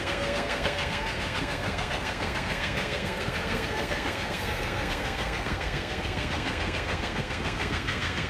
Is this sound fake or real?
fake